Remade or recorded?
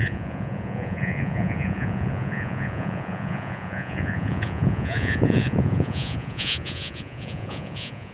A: remade